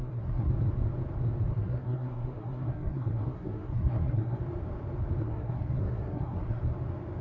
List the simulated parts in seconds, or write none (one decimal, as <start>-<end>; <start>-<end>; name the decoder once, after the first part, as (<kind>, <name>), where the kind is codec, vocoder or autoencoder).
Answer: 0.0-0.5 (codec, SNAC); 1.5-4.4; 5.2-6.6